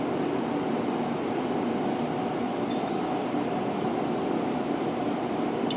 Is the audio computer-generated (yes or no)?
no